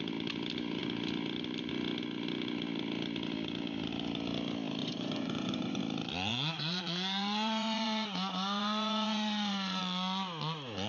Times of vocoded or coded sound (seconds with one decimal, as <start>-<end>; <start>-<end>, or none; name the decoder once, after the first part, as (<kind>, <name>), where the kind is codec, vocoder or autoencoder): 4.8-5.8 (vocoder, Vocos); 6.3-9.8